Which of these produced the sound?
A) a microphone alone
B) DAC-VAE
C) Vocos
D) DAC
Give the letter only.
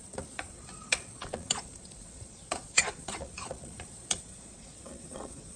C